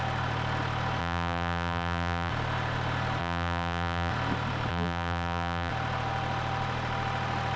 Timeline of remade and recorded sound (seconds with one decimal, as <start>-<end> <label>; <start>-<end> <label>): 0.0-1.0 recorded; 1.0-2.3 remade; 2.3-3.2 recorded; 3.2-4.1 remade; 4.1-4.7 recorded; 4.7-5.7 remade; 5.7-7.6 recorded